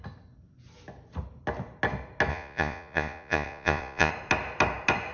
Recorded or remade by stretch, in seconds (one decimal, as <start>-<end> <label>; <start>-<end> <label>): 0.0-2.3 recorded; 2.3-4.1 remade; 4.1-5.1 recorded